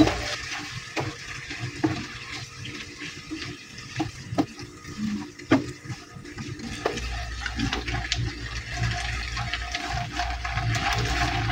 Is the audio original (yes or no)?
yes